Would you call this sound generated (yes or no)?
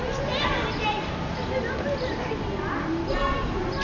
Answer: no